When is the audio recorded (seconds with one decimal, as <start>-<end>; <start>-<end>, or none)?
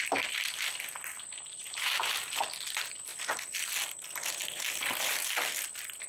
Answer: 0.0-6.1